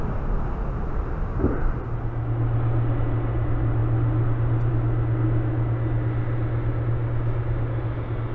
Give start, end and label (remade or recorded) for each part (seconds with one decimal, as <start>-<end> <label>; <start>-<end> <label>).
0.0-8.3 recorded